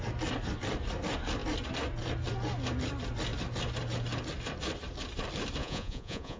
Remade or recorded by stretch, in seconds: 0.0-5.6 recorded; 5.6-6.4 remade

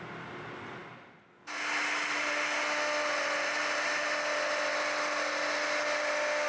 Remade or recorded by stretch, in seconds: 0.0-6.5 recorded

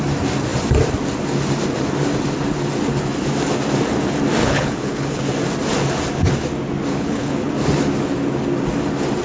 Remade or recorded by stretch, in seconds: 0.0-4.4 recorded; 4.4-5.2 remade; 5.2-6.9 recorded; 6.9-7.5 remade; 7.5-9.2 recorded